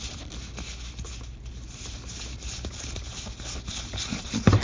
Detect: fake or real real